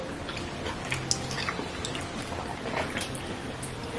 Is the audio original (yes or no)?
yes